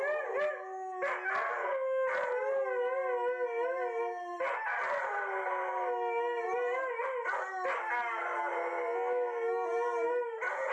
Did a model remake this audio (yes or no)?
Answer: no